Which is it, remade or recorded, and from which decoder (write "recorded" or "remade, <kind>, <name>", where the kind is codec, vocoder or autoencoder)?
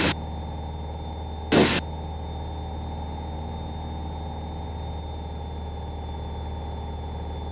recorded